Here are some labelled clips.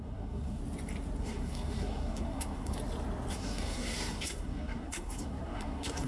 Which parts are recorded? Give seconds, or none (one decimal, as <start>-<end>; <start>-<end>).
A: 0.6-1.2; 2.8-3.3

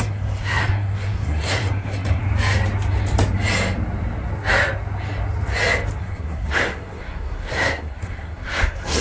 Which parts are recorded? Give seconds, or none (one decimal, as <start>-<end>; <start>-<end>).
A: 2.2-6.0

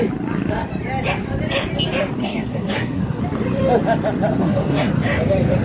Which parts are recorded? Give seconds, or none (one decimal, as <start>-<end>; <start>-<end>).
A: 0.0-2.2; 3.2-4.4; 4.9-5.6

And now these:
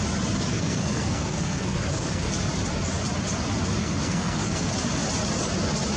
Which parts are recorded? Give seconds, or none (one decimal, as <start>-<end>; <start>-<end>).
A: 0.0-0.5; 2.3-3.8; 4.7-6.0

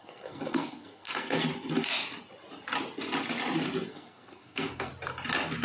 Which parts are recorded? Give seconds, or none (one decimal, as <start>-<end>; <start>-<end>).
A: 1.5-3.9; 4.9-5.6

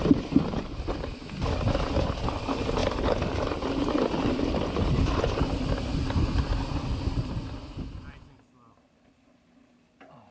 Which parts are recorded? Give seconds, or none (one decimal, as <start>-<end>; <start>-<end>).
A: 0.0-10.3